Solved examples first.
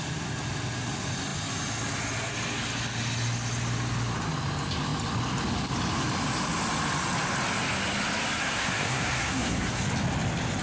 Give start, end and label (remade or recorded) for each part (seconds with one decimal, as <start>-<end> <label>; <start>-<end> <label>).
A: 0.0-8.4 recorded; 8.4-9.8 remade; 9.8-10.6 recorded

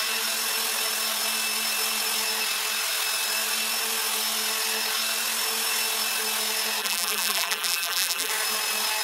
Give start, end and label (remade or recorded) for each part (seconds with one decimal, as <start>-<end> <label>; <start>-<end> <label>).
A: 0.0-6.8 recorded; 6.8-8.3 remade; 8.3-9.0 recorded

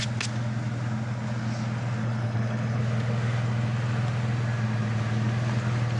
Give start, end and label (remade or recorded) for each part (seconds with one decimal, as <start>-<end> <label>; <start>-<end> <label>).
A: 0.0-2.0 recorded; 2.0-2.8 remade; 2.8-6.0 recorded